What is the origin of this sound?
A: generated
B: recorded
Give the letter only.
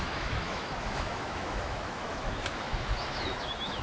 A